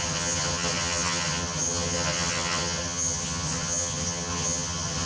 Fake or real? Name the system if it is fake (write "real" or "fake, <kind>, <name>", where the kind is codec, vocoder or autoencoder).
fake, vocoder, HiFi-GAN